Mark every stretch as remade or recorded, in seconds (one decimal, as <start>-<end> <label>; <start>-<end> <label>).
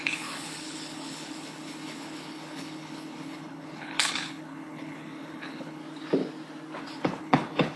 0.0-5.8 remade; 5.8-6.8 recorded; 6.8-7.8 remade